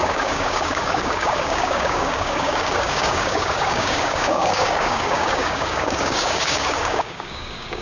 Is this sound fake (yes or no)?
yes